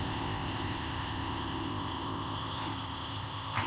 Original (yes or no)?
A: no